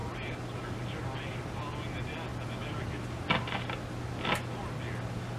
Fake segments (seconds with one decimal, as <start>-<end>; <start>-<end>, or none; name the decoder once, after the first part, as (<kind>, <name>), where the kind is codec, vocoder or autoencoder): none